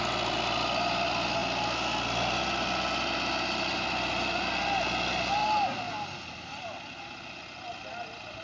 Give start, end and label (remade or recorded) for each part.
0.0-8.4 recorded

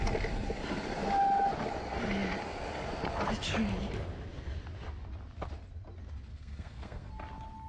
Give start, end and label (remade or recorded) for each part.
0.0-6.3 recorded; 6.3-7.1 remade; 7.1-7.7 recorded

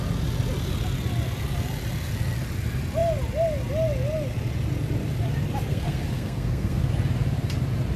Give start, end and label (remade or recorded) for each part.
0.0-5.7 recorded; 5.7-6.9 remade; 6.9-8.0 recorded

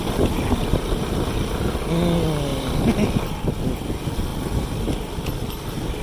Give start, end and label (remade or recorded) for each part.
0.0-6.0 recorded